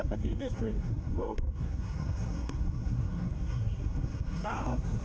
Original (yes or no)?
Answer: no